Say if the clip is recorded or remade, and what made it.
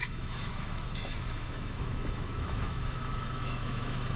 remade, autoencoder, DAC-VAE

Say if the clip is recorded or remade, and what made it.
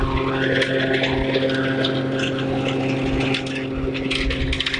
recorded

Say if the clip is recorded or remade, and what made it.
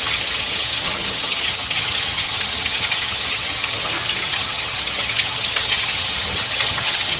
remade, vocoder, HiFi-GAN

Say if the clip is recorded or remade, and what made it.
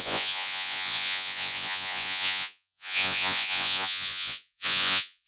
remade, vocoder, Vocos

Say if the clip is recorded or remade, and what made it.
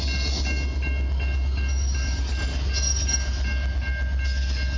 recorded